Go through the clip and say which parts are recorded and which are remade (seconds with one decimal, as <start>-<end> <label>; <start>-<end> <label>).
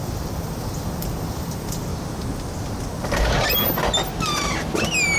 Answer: 0.0-1.9 remade; 1.9-5.2 recorded